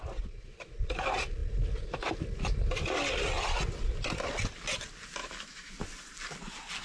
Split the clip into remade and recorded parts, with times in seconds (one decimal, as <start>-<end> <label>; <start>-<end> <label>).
0.0-5.2 recorded; 5.2-5.7 remade; 5.7-6.8 recorded